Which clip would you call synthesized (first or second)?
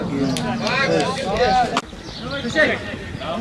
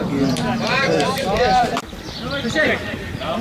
second